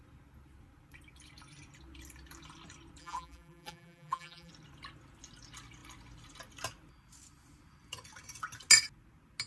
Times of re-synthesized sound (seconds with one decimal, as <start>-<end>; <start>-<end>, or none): 3.0-4.5